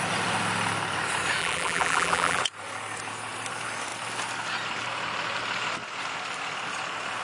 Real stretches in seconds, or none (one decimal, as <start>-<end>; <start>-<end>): 0.0-1.4; 2.4-7.2